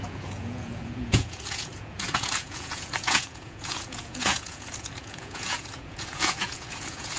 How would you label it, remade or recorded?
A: remade